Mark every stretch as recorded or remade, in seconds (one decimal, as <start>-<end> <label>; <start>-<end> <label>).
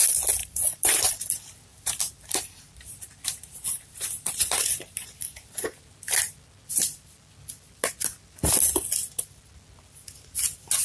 0.0-0.4 recorded; 0.4-1.1 remade; 1.1-1.7 recorded; 1.7-5.1 remade; 5.1-10.8 recorded